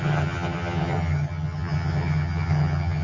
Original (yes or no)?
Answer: no